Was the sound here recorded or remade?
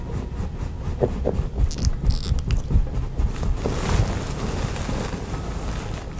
recorded